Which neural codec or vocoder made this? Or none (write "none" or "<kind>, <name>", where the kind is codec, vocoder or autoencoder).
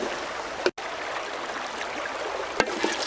none